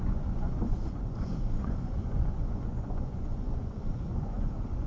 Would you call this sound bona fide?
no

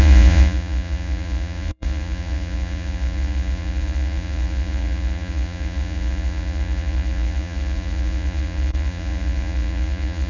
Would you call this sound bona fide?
no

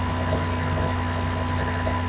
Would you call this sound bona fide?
yes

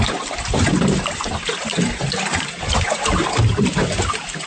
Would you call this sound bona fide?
yes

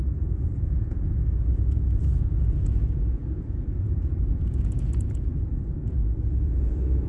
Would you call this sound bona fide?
no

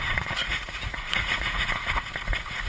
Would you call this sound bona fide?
no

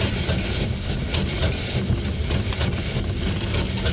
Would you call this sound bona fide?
yes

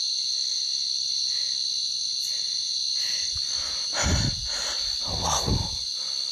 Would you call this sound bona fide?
yes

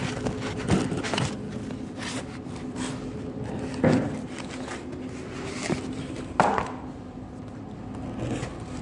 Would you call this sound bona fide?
yes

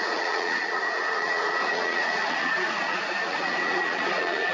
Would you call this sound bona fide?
no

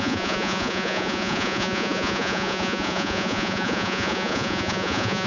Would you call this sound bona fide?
no